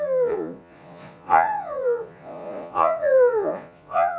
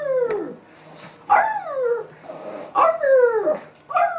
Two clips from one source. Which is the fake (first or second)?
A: first